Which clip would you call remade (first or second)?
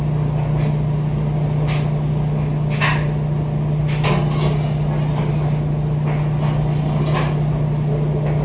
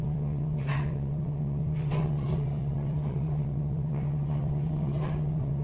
second